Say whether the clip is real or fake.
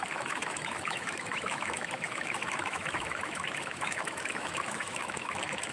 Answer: fake